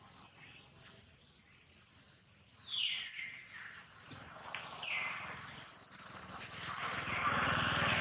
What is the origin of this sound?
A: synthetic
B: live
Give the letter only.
B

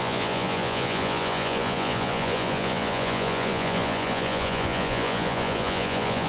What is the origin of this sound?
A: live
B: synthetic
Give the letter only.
B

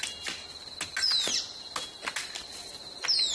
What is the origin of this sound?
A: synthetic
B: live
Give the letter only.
B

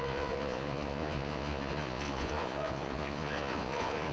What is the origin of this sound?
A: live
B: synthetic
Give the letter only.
B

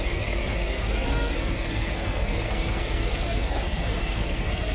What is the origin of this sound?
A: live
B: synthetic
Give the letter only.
B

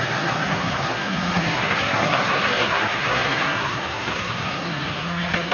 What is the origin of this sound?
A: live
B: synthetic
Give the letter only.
B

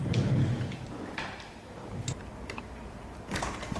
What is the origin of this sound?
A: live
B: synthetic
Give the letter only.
B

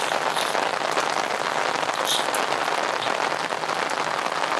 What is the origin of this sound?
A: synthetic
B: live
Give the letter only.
B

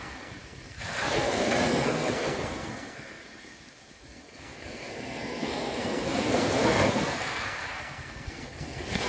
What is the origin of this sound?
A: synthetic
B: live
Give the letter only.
A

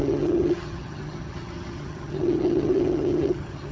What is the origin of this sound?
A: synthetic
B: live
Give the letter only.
A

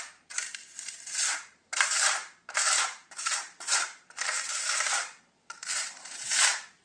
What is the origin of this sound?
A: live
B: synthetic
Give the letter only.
B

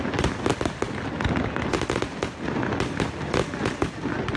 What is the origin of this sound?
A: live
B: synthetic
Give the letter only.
A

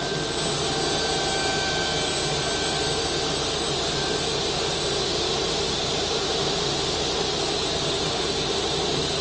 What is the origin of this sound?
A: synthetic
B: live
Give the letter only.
B